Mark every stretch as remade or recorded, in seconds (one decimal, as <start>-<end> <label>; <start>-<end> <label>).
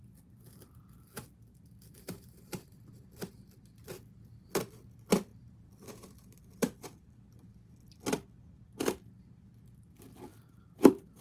0.0-2.0 recorded; 2.0-2.8 remade; 2.8-10.3 recorded; 10.3-11.2 remade